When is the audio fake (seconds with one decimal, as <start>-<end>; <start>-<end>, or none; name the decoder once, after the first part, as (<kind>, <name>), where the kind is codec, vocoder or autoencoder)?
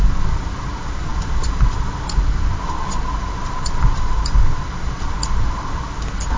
none